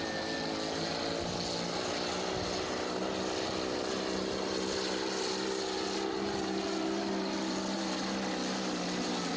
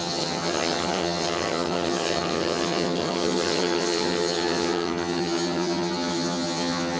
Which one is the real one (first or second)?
first